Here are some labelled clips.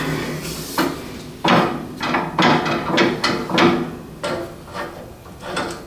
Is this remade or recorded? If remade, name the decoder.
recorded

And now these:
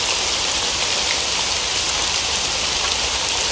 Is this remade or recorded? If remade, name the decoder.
recorded